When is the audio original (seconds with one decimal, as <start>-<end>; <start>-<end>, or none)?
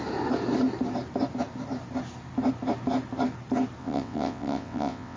0.0-3.8